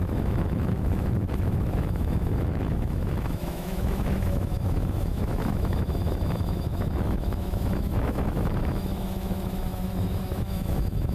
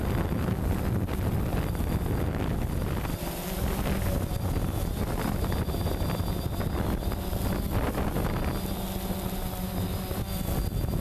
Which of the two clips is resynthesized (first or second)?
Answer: first